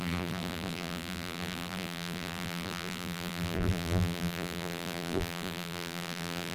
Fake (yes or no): yes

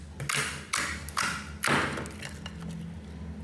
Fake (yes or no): no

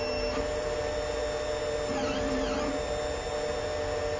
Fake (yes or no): no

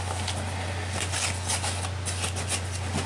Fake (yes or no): no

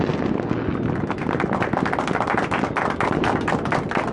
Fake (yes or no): no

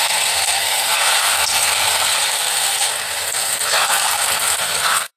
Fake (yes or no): yes